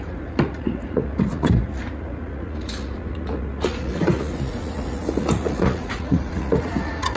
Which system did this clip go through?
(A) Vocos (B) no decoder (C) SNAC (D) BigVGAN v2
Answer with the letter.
A